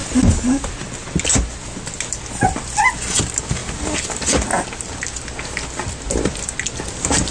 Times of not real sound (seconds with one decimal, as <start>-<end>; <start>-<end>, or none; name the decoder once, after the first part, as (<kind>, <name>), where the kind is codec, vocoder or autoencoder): none